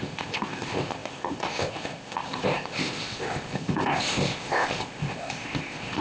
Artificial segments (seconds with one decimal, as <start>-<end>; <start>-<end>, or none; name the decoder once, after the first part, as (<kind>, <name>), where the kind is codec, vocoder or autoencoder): 0.0-6.0 (codec, ZipCodec)